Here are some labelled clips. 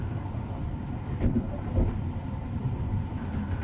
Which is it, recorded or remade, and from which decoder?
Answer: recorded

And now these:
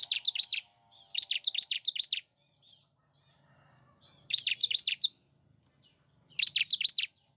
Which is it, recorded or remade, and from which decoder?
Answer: recorded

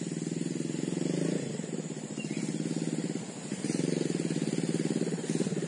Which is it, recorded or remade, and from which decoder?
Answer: recorded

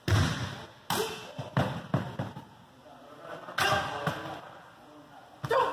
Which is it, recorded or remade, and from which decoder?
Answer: recorded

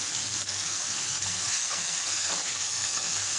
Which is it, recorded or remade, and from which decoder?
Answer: remade, codec, SNAC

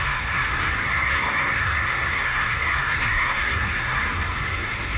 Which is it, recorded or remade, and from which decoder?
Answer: remade, codec, SNAC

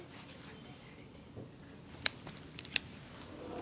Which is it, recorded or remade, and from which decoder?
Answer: recorded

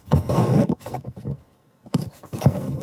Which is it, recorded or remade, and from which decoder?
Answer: remade, codec, SNAC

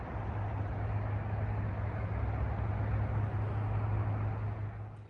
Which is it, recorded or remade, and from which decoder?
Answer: recorded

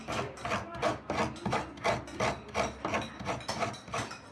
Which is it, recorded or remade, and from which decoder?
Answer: recorded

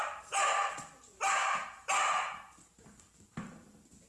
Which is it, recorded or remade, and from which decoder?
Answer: recorded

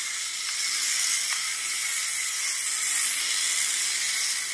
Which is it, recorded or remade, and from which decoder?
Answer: recorded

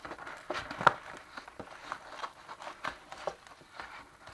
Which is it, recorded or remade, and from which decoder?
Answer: recorded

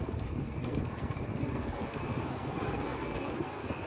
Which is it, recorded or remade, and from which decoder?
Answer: remade, codec, SNAC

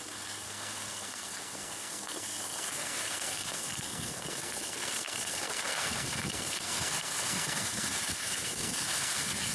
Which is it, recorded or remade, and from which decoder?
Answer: remade, codec, SNAC